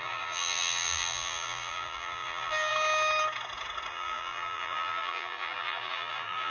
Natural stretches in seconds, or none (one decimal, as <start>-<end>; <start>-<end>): 2.7-3.9